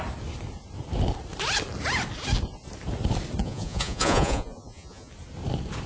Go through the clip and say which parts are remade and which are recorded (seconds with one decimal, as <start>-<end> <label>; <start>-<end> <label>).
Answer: 0.0-3.4 recorded; 3.4-5.1 remade; 5.1-5.9 recorded